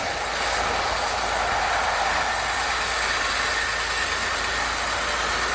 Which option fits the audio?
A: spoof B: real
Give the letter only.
B